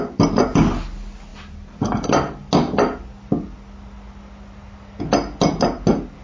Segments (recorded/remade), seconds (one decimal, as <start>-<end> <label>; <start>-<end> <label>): 0.0-6.2 recorded